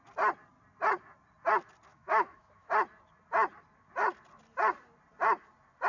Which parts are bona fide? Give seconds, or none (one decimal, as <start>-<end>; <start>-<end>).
0.0-1.9; 2.7-5.9